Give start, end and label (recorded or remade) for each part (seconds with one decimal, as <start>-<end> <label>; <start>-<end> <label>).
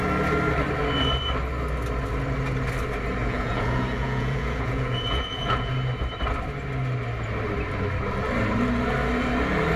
0.0-3.2 recorded; 3.2-5.7 remade; 5.7-9.8 recorded